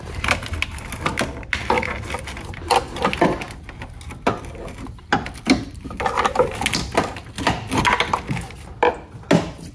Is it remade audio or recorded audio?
recorded